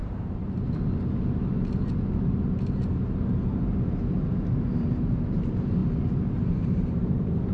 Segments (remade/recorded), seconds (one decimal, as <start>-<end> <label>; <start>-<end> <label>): 0.0-4.2 recorded; 4.2-5.8 remade; 5.8-6.4 recorded; 6.4-7.5 remade